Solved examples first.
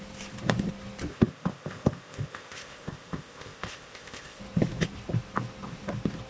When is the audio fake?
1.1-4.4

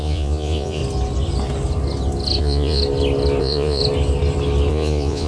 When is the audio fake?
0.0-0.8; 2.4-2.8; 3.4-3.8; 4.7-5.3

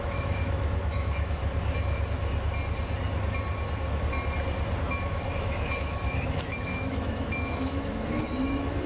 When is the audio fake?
0.0-1.4; 4.8-8.9

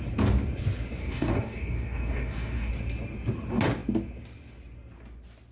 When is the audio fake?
1.0-2.7

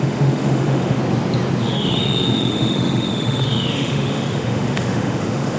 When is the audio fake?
0.0-1.0; 1.6-5.6

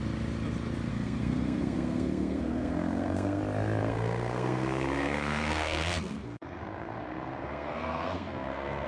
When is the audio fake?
0.9-3.4; 3.8-8.9